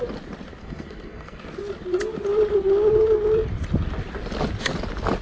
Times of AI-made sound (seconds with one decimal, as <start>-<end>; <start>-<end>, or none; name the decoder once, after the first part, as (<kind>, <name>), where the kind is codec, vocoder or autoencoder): 0.6-1.4 (codec, SNAC)